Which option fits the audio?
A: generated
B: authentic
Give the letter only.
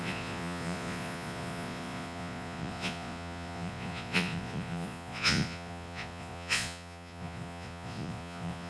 A